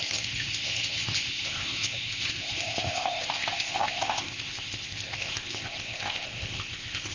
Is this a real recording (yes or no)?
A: no